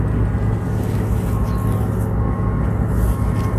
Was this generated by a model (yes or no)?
no